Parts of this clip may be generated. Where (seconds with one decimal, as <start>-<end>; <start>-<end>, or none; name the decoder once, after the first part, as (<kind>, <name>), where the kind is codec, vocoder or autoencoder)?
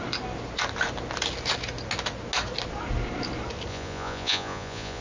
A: 3.7-5.0 (vocoder, Vocos)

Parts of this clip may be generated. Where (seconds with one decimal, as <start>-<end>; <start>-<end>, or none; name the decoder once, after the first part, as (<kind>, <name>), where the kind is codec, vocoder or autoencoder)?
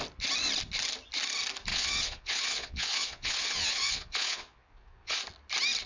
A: 1.7-5.2 (vocoder, Vocos)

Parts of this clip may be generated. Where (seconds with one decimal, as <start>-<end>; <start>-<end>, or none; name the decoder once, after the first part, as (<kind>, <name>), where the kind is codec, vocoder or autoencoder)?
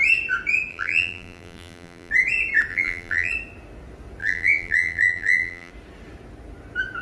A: 0.7-2.1 (vocoder, BigVGAN v2); 2.7-3.3; 4.2-5.7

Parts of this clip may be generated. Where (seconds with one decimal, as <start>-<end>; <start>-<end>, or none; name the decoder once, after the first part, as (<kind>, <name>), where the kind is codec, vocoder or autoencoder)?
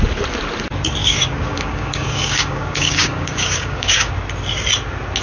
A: 1.0-4.1 (codec, DAC)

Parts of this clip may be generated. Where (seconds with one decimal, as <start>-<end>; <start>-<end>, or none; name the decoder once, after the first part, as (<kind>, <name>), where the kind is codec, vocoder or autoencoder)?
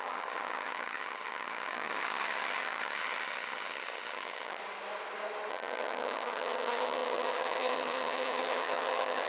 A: 0.0-4.6 (vocoder, HiFi-GAN); 5.5-9.3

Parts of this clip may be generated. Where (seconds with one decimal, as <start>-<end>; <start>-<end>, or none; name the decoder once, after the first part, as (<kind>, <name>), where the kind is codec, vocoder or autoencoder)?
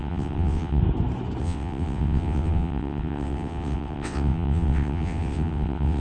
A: 0.0-0.8 (vocoder, WaveNeXt); 1.4-6.0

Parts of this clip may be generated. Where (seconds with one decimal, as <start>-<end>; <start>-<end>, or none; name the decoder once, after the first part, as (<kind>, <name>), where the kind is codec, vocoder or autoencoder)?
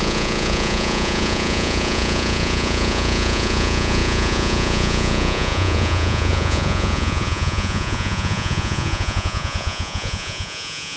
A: 0.0-11.0 (vocoder, Vocos)